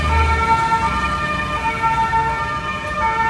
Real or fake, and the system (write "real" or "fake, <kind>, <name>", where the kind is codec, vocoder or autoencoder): real